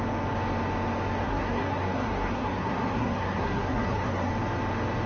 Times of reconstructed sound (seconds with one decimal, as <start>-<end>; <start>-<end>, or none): 1.2-4.3